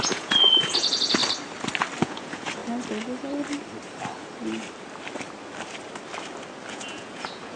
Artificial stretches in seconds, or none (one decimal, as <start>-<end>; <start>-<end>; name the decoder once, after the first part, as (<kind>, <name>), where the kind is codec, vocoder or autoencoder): 0.0-1.2 (vocoder, Vocos); 2.0-2.6; 6.7-7.6